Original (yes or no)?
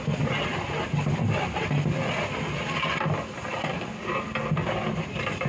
yes